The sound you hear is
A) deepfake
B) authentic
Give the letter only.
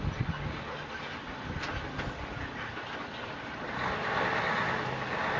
B